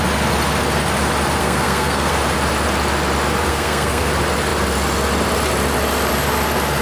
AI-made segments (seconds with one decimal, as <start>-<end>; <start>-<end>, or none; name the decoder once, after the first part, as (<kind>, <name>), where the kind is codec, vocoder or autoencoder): 1.4-2.1 (codec, SNAC); 3.5-4.1

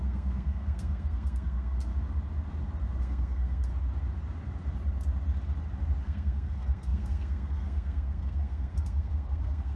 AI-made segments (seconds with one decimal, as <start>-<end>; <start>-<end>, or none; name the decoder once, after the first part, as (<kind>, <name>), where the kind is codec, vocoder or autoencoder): 0.0-1.9 (codec, SNAC); 3.0-3.7; 6.0-9.8